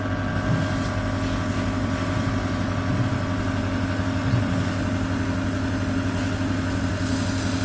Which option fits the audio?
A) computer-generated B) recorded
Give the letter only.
B